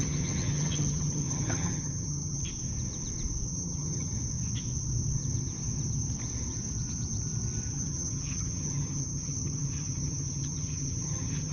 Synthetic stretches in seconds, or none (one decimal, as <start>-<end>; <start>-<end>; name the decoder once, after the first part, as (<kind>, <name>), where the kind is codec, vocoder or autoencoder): 0.0-2.5 (vocoder, HiFi-GAN); 3.5-4.1; 7.7-11.5